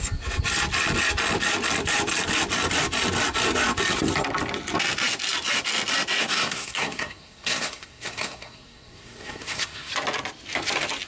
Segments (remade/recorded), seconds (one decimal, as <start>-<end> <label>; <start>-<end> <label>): 0.0-6.2 recorded; 6.2-9.9 remade; 9.9-11.1 recorded